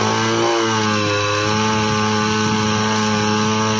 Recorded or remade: recorded